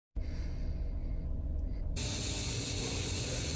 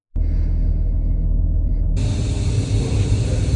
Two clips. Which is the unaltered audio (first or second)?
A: second